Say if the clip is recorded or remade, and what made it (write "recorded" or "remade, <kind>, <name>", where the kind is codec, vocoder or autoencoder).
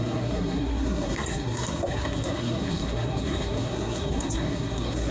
remade, codec, SNAC